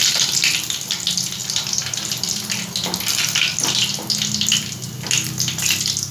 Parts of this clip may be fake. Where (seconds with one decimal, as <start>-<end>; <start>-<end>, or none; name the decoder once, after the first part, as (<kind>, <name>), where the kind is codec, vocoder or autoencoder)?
none